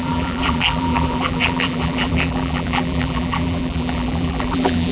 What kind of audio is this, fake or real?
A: fake